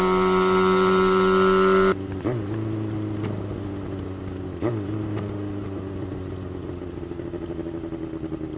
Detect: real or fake real